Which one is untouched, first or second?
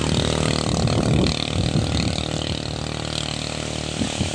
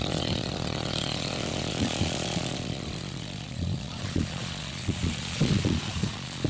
first